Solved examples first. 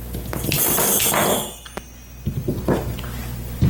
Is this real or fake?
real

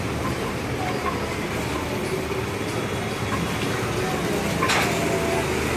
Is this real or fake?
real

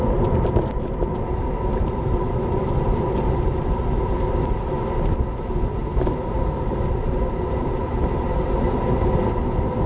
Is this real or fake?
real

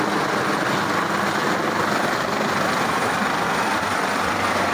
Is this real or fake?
real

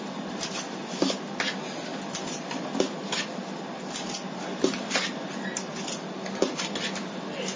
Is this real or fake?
real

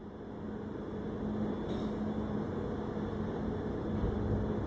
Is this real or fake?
real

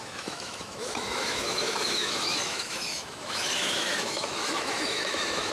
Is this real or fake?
fake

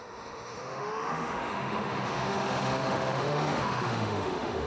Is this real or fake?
fake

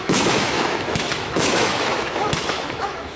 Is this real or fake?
fake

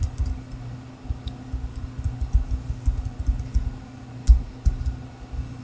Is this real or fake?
real